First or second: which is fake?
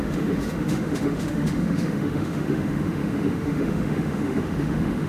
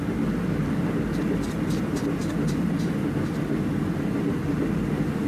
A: first